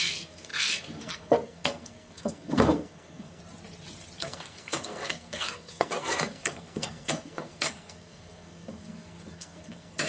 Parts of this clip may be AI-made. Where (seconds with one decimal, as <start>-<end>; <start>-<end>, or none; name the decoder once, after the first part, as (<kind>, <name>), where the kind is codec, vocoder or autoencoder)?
0.0-3.4 (codec, SNAC); 4.2-10.1